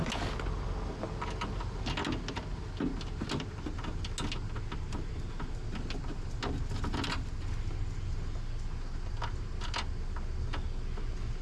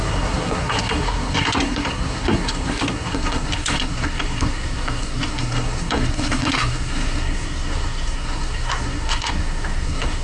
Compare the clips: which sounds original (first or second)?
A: first